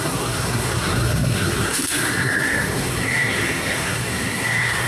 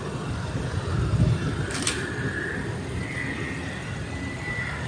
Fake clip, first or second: first